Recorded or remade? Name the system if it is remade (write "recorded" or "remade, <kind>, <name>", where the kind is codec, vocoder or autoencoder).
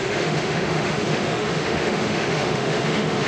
remade, autoencoder, DAC-VAE